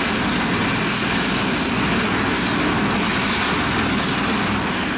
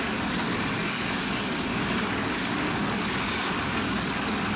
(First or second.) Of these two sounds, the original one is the first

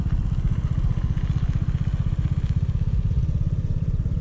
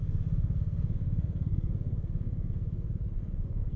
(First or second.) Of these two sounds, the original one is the first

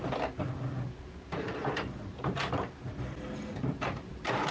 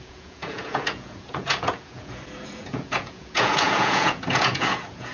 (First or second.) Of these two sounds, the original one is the first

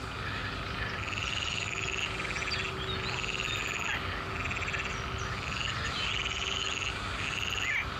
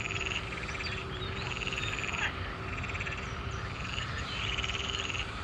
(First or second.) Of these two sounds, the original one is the first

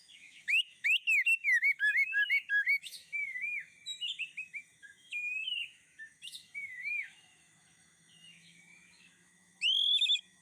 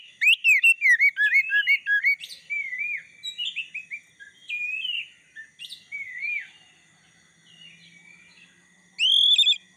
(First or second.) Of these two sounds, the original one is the second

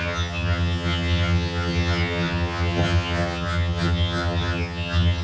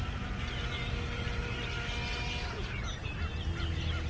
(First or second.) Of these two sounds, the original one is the second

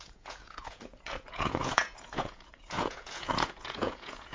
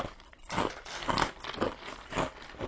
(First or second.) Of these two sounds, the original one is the second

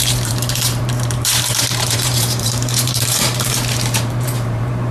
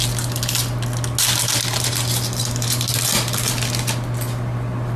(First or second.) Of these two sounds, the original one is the second